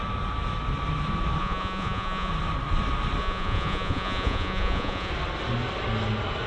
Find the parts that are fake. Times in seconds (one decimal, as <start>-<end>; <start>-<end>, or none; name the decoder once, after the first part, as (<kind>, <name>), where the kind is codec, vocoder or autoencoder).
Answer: 1.4-2.3 (vocoder, Vocos); 3.2-5.1